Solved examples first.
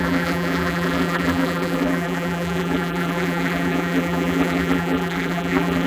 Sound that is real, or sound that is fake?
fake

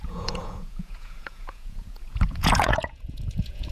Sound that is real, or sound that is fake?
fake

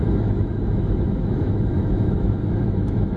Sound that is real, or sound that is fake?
fake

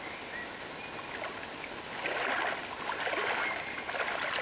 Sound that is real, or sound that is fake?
real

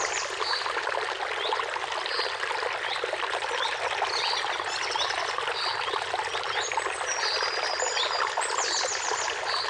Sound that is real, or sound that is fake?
real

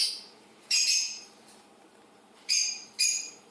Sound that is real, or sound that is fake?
fake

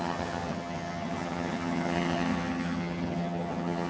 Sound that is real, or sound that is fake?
fake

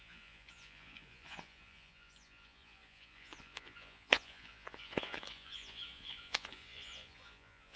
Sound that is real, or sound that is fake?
fake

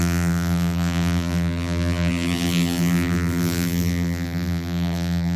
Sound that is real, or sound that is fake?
fake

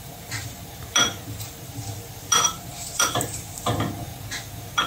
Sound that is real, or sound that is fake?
fake